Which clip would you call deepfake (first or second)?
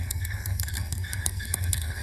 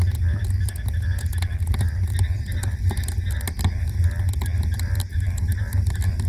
first